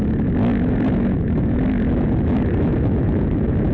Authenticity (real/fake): fake